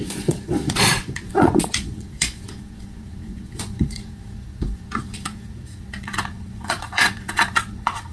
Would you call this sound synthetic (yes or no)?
yes